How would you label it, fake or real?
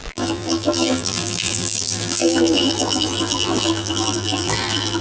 fake